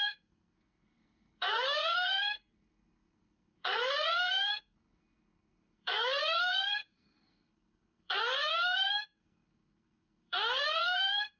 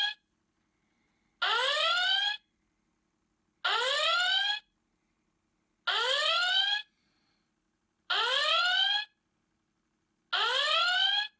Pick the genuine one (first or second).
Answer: second